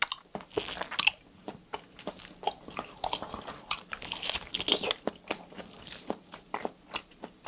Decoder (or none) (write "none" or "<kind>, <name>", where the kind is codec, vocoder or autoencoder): none